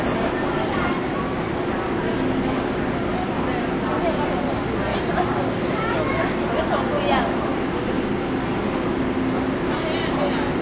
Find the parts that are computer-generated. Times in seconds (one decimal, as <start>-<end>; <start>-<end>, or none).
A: none